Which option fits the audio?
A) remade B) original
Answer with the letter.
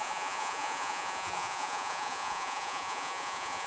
A